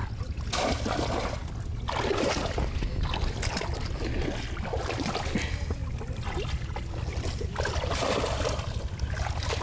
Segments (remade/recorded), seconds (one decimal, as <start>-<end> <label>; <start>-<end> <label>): 0.0-9.6 recorded